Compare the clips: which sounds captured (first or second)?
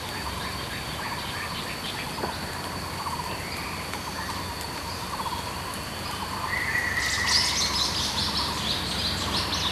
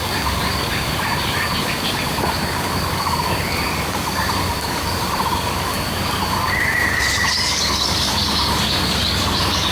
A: first